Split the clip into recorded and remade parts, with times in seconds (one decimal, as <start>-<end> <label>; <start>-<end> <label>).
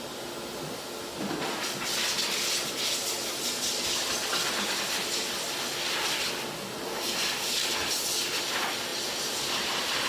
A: 0.0-10.1 recorded